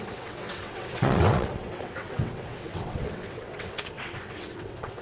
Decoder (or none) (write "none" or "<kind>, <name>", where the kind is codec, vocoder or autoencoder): vocoder, WaveNeXt